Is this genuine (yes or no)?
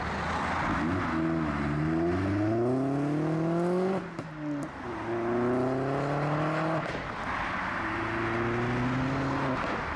yes